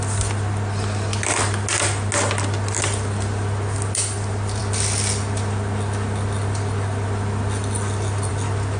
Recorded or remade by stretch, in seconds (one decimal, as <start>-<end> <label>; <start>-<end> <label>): 0.0-8.8 recorded